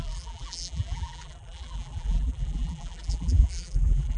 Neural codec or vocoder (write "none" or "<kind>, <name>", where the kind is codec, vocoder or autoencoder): vocoder, BigVGAN v2